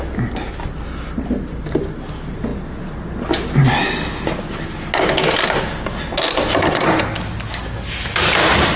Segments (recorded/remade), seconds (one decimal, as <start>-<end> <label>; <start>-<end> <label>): 0.0-8.8 recorded